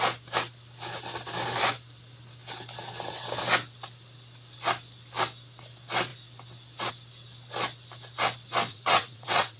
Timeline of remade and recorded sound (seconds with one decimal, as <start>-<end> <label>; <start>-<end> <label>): 0.0-8.7 recorded; 8.7-9.6 remade